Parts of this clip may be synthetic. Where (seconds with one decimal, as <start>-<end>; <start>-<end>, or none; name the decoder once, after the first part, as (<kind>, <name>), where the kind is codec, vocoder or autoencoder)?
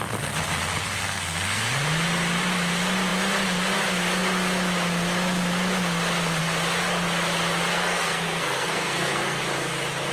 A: 1.0-1.7 (codec, SNAC); 7.7-9.4